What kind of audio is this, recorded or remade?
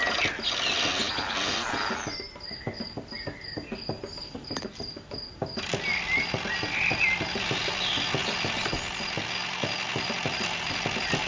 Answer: recorded